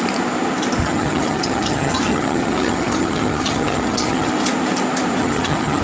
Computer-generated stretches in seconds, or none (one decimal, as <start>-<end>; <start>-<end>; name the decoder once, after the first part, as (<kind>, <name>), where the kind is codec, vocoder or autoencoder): 0.8-4.3 (vocoder, HiFi-GAN); 5.2-5.8